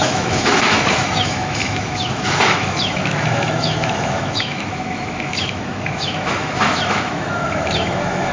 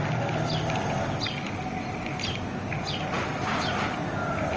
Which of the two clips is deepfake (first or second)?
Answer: first